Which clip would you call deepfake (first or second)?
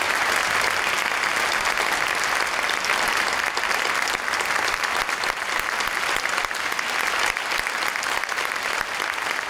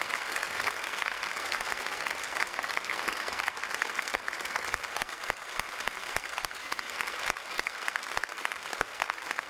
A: second